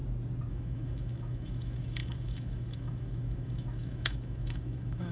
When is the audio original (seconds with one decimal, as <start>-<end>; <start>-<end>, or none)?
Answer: 0.0-0.5